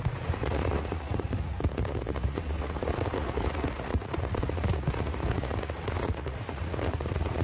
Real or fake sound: fake